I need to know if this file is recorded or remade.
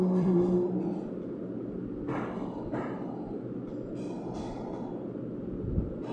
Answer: remade